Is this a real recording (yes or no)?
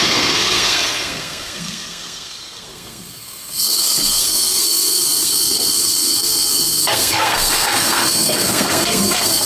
no